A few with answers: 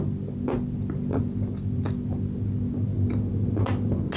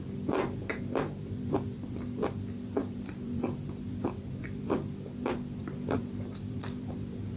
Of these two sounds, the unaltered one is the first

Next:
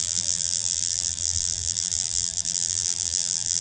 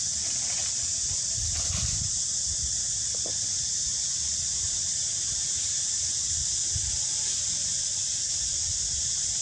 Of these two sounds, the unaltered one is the second